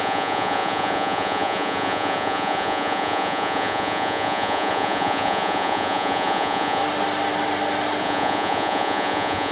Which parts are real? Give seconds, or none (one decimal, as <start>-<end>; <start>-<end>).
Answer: 6.8-8.0